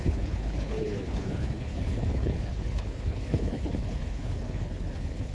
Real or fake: fake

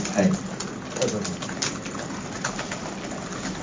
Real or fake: real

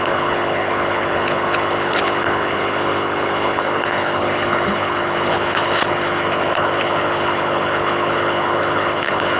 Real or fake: fake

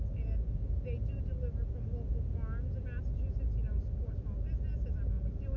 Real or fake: real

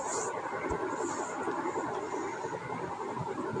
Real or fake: real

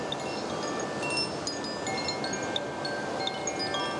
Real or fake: real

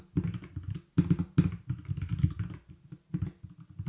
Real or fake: real